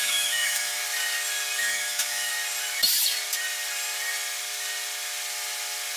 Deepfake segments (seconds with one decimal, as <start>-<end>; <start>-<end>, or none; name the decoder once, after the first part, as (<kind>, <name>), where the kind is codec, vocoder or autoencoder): 0.0-0.8 (autoencoder, DAC-VAE); 1.6-2.3